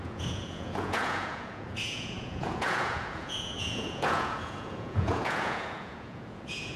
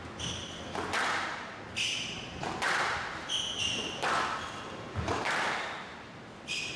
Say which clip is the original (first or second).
second